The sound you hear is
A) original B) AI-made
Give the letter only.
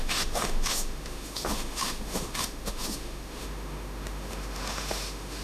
B